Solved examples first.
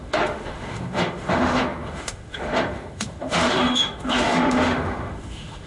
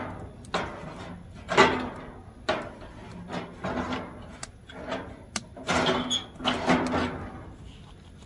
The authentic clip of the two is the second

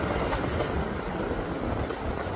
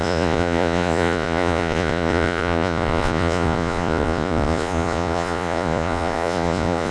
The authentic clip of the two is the first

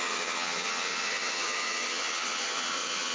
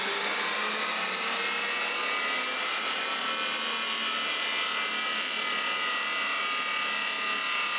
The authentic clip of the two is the second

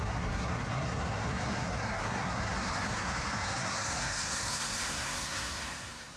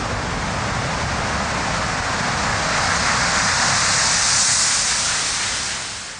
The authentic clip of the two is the second